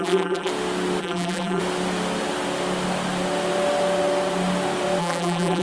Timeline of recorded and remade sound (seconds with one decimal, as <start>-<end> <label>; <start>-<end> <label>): 0.0-0.5 remade; 0.5-1.0 recorded; 1.0-1.6 remade; 1.6-5.0 recorded; 5.0-5.6 remade